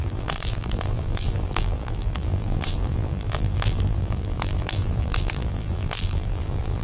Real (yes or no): no